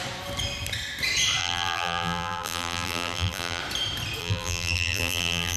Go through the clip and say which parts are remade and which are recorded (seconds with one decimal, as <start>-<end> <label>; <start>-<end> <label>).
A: 0.0-1.4 recorded; 1.4-3.6 remade; 3.6-4.2 recorded; 4.2-5.6 remade